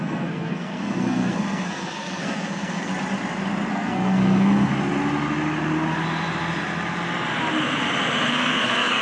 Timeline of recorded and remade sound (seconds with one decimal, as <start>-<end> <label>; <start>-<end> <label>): 0.0-2.9 remade; 2.9-3.7 recorded; 3.7-4.7 remade; 4.7-8.3 recorded; 8.3-9.0 remade

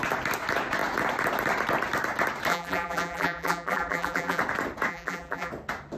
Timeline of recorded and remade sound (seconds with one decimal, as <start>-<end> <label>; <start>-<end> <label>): 0.0-2.5 recorded; 2.5-4.4 remade; 4.4-4.9 recorded; 4.9-5.5 remade; 5.5-6.0 recorded

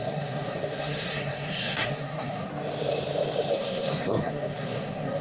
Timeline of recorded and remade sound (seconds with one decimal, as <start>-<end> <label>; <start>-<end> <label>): 0.0-2.5 remade; 2.5-3.5 recorded; 3.5-5.2 remade